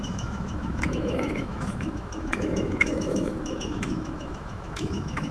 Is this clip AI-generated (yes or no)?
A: yes